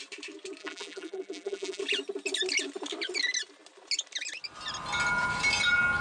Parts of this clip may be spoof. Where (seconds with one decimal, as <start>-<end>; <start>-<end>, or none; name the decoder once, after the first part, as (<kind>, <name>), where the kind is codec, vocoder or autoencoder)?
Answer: 0.6-1.8 (vocoder, BigVGAN v2)